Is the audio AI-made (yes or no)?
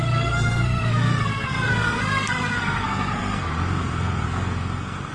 yes